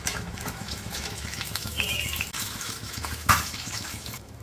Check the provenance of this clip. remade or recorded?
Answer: remade